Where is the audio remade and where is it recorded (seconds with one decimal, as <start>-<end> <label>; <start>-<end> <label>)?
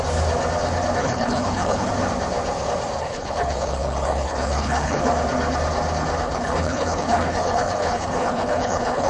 0.0-1.0 recorded; 1.0-1.9 remade; 1.9-3.0 recorded; 3.0-5.0 remade; 5.0-6.2 recorded; 6.2-9.1 remade